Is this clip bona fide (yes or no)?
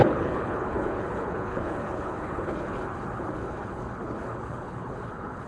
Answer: no